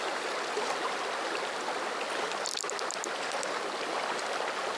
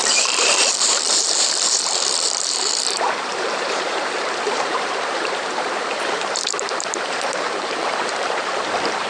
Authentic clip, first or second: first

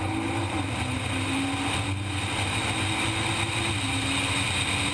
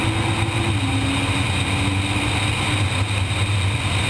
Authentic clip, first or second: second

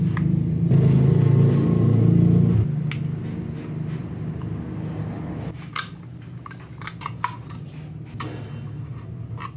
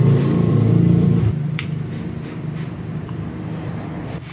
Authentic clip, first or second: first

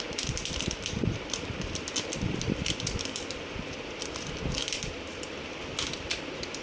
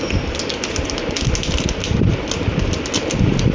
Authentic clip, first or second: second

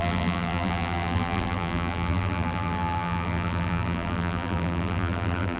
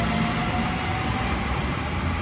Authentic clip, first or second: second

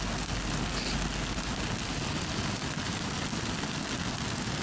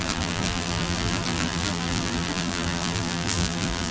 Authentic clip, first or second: first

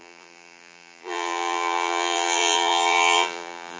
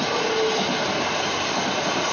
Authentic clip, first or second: second